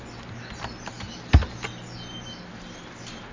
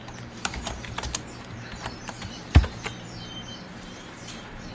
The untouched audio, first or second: first